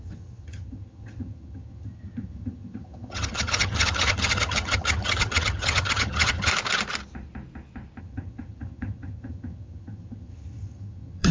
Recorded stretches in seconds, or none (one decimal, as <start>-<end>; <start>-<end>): 6.5-8.0

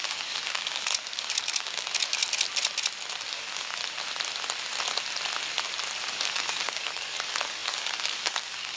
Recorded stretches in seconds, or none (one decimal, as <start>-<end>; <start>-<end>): 2.2-3.3; 3.8-6.1

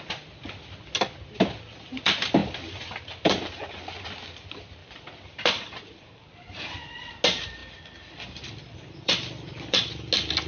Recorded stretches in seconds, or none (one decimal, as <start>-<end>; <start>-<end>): 0.0-2.4; 4.1-4.8; 7.1-7.6; 9.9-10.5

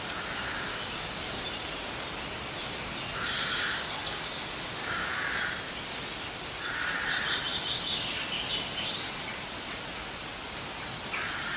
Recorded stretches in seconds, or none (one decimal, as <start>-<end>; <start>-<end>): 0.0-0.7; 1.3-4.8; 5.4-11.6